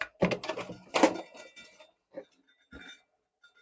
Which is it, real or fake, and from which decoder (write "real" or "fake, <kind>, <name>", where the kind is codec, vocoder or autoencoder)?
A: real